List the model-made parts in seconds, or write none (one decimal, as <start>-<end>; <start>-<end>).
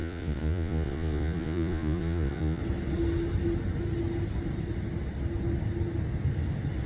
0.0-2.6